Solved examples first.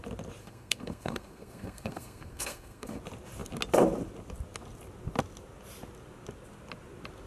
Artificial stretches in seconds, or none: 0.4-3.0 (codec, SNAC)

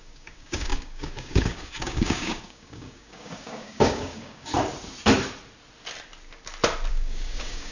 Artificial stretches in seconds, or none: 0.0-4.5 (codec, DAC); 6.9-7.7